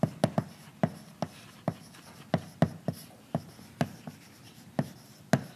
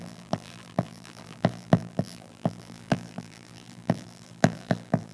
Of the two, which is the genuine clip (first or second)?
first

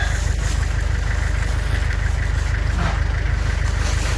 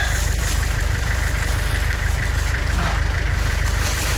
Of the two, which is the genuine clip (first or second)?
first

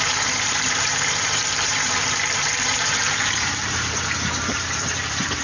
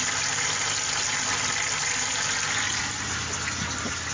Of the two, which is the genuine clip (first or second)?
second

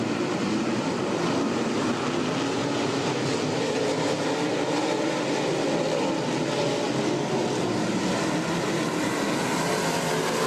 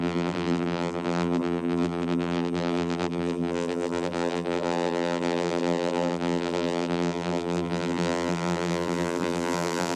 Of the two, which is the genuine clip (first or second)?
first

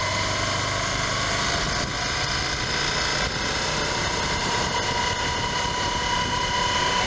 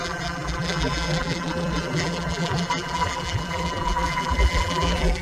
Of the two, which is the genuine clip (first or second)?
first